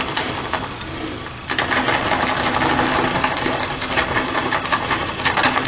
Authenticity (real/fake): real